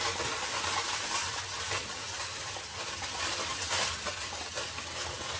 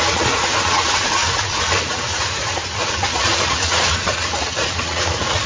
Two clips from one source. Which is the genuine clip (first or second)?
first